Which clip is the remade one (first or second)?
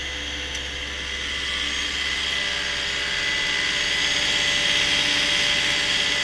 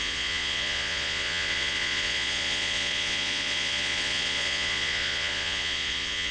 second